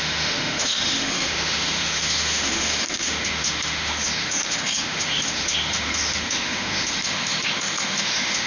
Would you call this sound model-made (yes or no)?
yes